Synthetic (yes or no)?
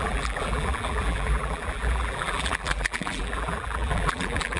yes